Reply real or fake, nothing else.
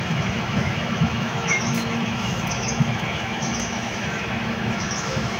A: fake